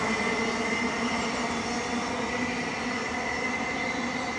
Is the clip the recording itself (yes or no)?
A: yes